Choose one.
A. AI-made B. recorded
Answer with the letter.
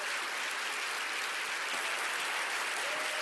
B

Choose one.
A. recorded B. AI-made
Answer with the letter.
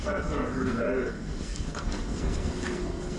B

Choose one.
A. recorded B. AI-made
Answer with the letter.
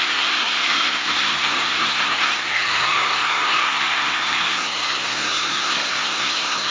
B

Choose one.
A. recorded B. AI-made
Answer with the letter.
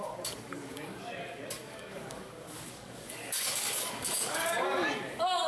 B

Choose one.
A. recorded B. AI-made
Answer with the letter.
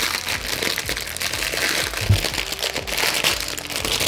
A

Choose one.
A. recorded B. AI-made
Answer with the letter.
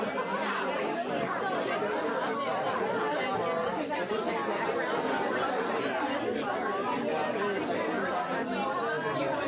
A